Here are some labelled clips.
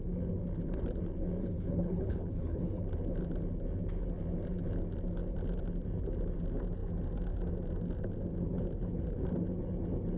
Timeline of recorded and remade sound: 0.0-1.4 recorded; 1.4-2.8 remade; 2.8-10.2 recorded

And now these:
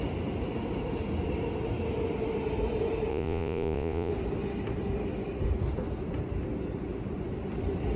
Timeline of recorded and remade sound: 0.0-3.1 recorded; 3.1-4.1 remade; 4.1-8.0 recorded

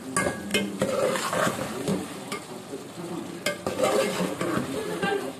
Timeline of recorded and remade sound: 0.0-1.9 recorded; 1.9-2.5 remade; 2.5-4.8 recorded; 4.8-5.4 remade

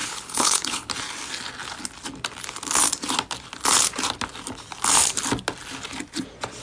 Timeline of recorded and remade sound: 0.0-0.9 remade; 0.9-6.6 recorded

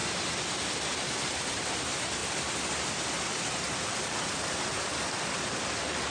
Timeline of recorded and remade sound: 0.0-6.1 recorded

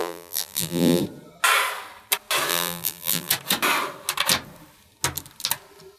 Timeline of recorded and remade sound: 0.0-1.0 remade; 1.0-2.5 recorded; 2.5-3.3 remade; 3.3-6.0 recorded